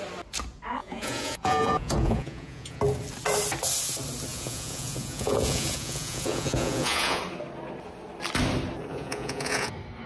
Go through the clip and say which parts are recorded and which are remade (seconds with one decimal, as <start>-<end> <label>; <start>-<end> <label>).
0.0-0.8 recorded; 0.8-2.8 remade; 2.8-4.3 recorded; 4.3-7.2 remade; 7.2-8.9 recorded; 8.9-9.7 remade; 9.7-10.1 recorded